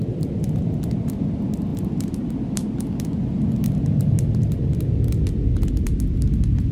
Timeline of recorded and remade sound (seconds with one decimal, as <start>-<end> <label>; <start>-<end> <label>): 0.0-6.7 recorded